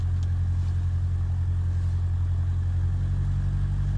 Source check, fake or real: real